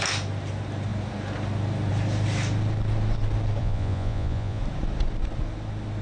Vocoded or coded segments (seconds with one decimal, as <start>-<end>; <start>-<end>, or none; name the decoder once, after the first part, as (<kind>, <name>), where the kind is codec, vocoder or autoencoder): 3.6-4.6 (vocoder, Vocos)

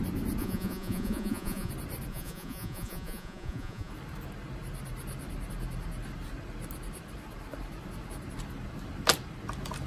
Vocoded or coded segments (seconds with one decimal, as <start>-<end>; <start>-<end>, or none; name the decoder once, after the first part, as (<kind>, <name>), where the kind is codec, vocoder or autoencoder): 0.4-1.7 (vocoder, Vocos); 2.1-3.9

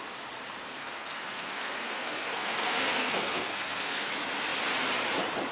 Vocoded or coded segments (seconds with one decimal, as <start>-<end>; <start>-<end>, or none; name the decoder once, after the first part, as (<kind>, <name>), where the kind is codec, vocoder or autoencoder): 0.8-4.1 (codec, SNAC)

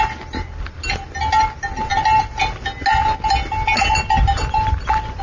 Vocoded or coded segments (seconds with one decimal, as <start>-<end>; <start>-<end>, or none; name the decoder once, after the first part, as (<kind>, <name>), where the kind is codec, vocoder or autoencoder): none

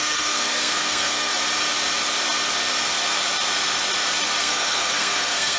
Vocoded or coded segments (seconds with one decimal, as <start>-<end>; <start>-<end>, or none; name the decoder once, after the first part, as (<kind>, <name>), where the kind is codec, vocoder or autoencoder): 0.0-1.3 (codec, SNAC); 4.4-5.6

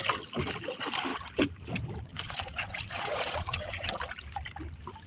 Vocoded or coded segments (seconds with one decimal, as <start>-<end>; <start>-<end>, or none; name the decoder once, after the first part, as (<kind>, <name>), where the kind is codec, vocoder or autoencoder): 2.1-4.0 (vocoder, Vocos)